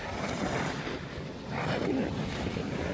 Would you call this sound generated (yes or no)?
yes